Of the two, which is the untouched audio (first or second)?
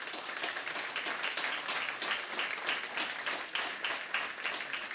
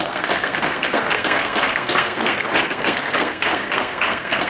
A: first